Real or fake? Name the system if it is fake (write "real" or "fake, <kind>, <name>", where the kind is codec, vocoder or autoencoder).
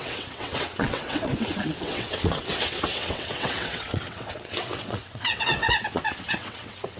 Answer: fake, vocoder, WaveNeXt